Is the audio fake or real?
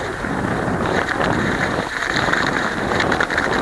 fake